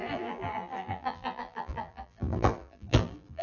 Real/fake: fake